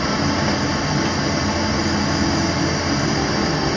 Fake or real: real